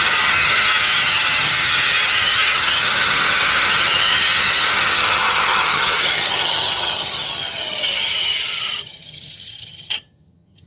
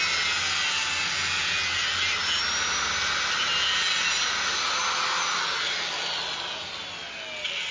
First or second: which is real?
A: second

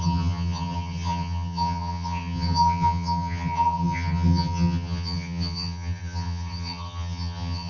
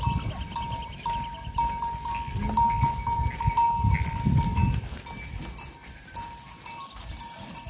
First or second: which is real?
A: second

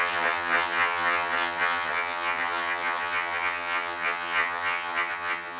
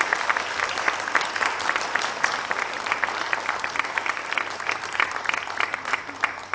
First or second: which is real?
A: second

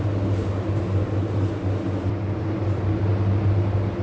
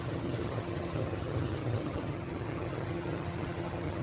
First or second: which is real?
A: first